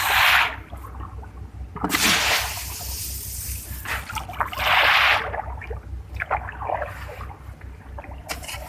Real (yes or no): yes